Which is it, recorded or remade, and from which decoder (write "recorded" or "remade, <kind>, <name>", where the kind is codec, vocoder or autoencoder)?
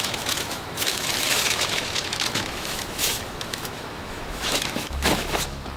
remade, autoencoder, DAC-VAE